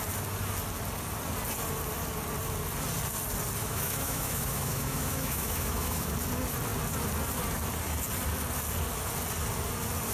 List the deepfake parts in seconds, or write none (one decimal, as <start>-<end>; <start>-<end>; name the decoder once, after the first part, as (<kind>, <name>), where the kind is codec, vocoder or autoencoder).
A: 3.6-6.1 (autoencoder, DAC-VAE)